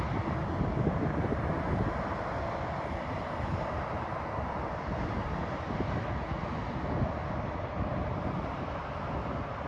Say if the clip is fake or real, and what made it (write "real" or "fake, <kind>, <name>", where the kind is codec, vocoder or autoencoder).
real